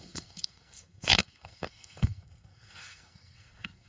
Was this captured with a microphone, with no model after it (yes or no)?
no